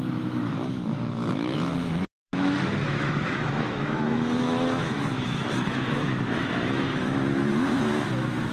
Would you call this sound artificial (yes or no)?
yes